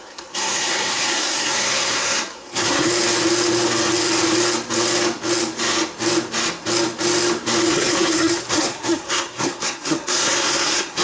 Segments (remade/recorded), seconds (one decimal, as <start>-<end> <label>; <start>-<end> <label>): 0.0-2.9 remade; 2.9-7.7 recorded; 7.7-11.0 remade